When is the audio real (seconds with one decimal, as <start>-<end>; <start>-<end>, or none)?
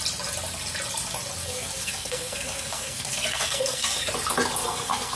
0.0-1.4; 4.1-4.6